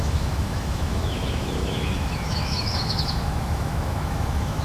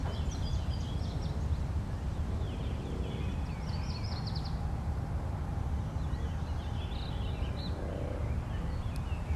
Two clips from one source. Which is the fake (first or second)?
first